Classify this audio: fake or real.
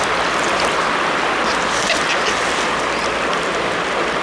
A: real